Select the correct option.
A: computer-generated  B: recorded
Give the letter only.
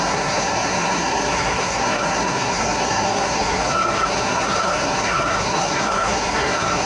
A